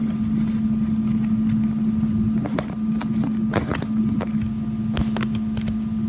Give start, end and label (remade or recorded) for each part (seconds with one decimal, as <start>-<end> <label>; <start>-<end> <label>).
0.0-6.1 recorded